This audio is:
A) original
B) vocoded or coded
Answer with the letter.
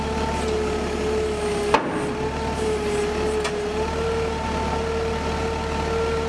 A